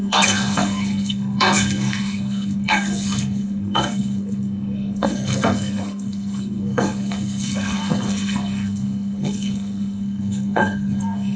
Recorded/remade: remade